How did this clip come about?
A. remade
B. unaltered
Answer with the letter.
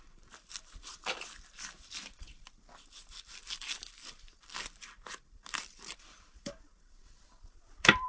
A